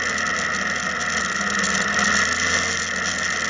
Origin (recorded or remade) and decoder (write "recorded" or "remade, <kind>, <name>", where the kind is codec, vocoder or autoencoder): recorded